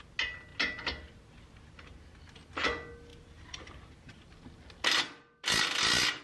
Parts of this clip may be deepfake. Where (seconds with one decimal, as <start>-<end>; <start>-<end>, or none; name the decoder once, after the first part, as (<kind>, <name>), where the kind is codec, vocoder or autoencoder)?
3.1-4.0 (vocoder, BigVGAN v2)